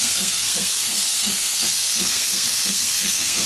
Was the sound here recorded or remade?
remade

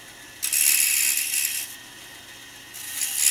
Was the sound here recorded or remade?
recorded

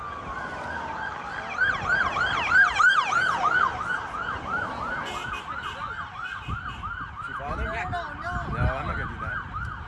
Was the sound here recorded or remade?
recorded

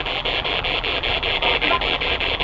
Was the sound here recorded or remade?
remade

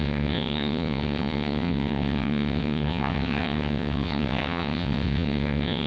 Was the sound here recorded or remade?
remade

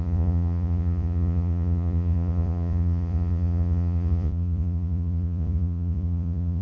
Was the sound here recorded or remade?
remade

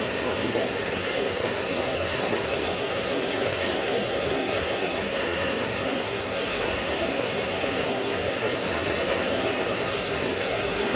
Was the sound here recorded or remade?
remade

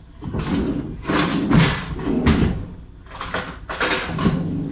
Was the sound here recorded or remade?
recorded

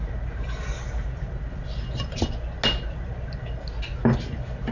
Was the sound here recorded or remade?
recorded